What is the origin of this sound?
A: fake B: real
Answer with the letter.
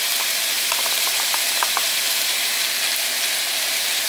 A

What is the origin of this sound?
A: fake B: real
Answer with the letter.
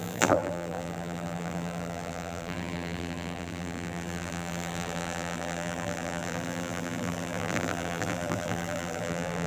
A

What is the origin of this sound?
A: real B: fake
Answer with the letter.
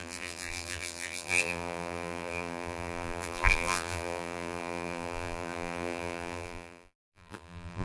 B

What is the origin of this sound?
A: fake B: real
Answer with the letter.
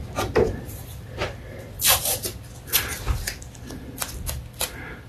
A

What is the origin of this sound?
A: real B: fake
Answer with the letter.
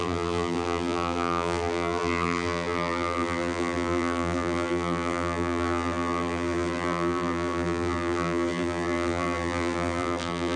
B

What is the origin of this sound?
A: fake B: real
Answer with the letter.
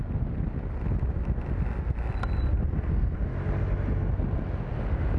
B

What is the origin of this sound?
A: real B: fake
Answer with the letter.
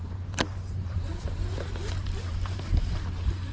B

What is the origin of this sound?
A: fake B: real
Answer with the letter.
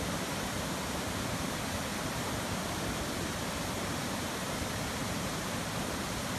A